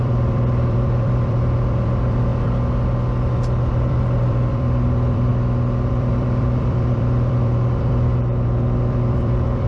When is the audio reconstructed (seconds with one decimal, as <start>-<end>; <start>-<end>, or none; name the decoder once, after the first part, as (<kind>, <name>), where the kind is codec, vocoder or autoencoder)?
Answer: 0.0-2.3 (vocoder, BigVGAN v2); 3.7-5.3; 5.9-9.7